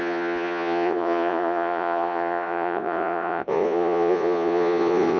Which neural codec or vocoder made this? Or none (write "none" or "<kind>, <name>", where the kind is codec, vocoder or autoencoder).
vocoder, Vocos